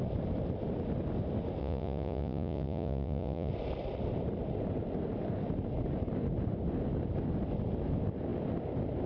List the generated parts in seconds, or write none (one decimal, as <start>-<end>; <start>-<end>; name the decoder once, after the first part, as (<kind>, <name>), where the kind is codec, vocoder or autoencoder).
1.6-3.5 (vocoder, Vocos)